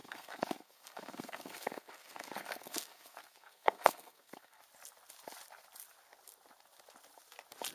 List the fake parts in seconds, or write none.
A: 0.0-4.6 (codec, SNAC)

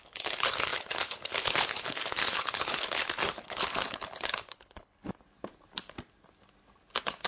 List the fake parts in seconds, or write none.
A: 0.0-5.1 (codec, HILCodec)

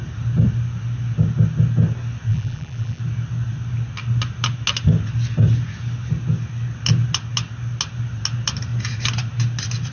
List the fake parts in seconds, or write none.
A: 2.3-3.0 (vocoder, BigVGAN v2)

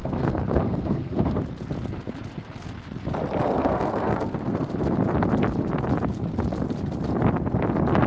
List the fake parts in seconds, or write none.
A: 0.0-1.4 (codec, SNAC); 3.5-4.7

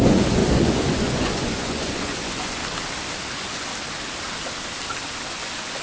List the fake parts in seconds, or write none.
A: 0.0-2.6 (vocoder, Vocos); 3.3-3.7; 5.3-5.8